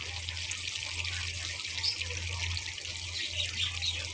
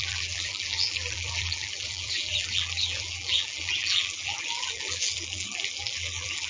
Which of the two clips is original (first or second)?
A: first